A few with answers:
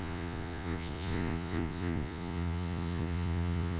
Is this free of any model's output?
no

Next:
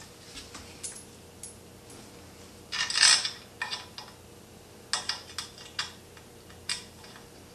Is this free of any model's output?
yes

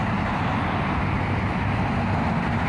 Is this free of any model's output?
yes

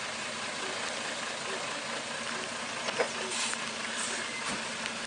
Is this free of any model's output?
yes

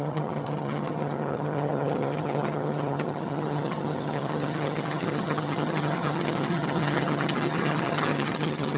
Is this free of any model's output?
no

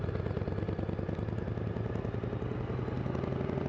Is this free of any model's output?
yes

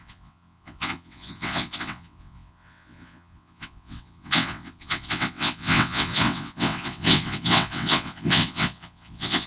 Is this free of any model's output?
no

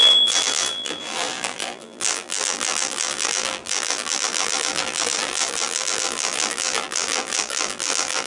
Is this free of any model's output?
no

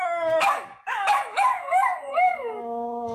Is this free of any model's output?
no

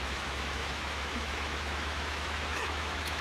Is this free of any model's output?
no